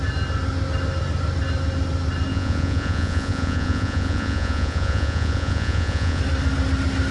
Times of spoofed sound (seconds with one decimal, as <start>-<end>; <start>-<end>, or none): 2.3-6.2